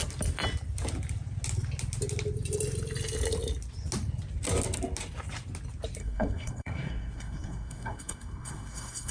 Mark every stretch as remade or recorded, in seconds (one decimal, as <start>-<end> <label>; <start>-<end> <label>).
0.0-6.0 recorded; 6.0-9.1 remade